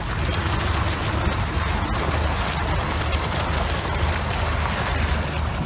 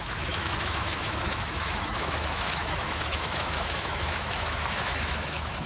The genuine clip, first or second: first